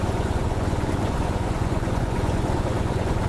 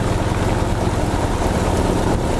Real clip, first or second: second